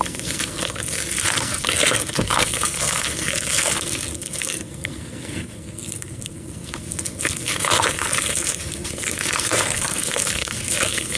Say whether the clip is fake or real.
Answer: fake